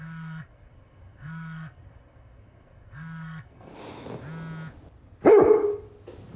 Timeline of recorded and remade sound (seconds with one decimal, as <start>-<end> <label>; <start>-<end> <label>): 0.0-3.7 remade; 3.7-6.4 recorded